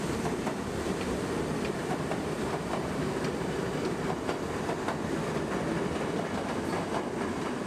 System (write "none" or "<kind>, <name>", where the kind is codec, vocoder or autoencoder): none